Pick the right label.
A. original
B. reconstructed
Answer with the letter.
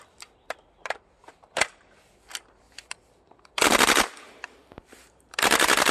B